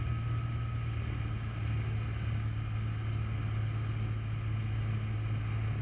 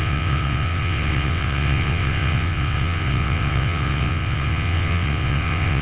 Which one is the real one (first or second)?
first